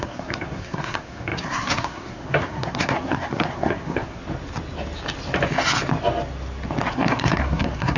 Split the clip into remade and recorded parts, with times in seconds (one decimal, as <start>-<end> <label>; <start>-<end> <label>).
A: 0.0-4.2 remade; 4.2-6.9 recorded; 6.9-8.0 remade